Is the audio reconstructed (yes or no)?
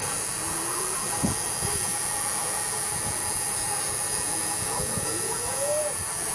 yes